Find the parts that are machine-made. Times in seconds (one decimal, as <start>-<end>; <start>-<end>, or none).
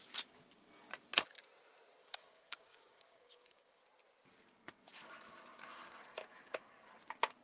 2.0-3.8